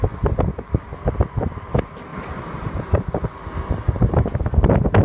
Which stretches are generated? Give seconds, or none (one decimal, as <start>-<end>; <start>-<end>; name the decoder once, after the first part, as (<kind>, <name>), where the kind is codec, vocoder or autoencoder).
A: 2.1-3.1 (vocoder, BigVGAN v2)